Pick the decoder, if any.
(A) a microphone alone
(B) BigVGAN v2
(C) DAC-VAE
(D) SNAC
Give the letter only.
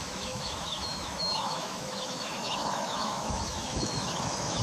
C